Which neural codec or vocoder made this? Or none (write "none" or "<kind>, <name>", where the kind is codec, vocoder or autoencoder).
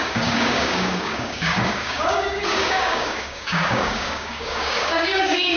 codec, DAC